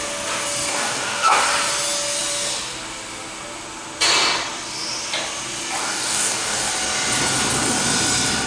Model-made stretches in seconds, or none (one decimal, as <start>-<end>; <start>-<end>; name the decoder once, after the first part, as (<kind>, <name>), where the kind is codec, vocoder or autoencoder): 0.7-1.4 (codec, DAC); 5.8-6.7